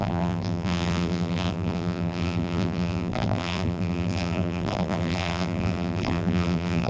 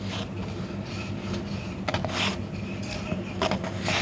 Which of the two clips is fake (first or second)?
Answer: first